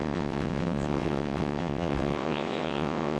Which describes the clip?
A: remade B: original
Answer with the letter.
A